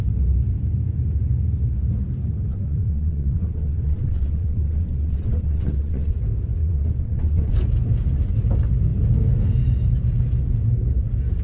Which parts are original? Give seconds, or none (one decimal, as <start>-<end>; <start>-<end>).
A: 0.0-2.5; 6.1-6.6; 7.5-11.4